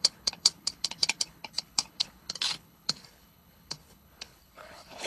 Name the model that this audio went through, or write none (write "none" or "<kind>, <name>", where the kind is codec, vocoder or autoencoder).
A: codec, HILCodec